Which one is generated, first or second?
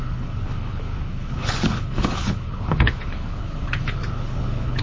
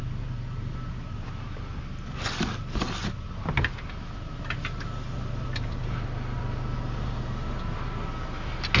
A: first